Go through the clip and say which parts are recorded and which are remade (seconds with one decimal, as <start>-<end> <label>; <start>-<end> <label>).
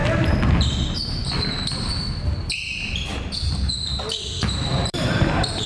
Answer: 0.0-2.7 recorded; 2.7-3.1 remade; 3.1-4.7 recorded; 4.7-5.7 remade